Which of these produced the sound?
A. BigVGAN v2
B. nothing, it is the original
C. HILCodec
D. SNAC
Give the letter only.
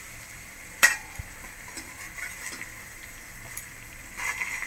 A